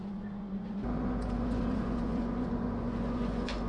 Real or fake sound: fake